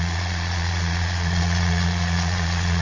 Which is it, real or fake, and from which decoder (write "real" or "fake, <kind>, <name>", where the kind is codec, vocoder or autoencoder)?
fake, vocoder, Vocos